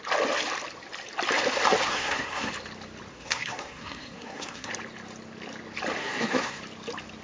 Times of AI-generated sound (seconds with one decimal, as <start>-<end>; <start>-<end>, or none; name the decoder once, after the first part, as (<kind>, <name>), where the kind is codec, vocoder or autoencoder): 1.9-2.5 (codec, SNAC); 3.1-4.7; 6.0-6.6